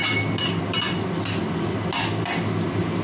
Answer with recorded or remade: recorded